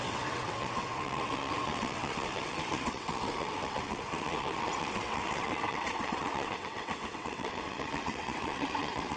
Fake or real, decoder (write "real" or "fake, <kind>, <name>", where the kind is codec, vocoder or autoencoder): fake, vocoder, WaveNeXt